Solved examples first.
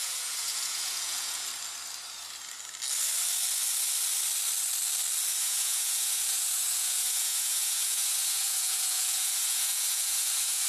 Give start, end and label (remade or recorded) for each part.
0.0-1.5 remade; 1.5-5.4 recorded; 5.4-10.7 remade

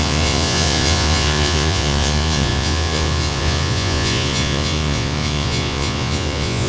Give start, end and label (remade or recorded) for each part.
0.0-6.7 remade